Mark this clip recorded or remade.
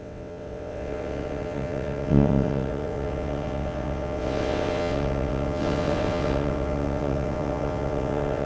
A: remade